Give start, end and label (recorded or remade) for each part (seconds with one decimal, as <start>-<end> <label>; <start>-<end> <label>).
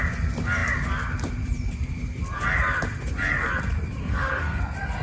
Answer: 0.0-4.0 recorded; 4.0-4.6 remade; 4.6-5.0 recorded